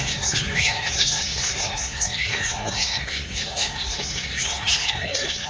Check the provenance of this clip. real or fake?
fake